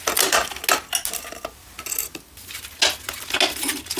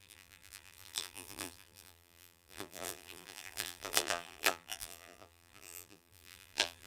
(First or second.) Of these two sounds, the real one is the first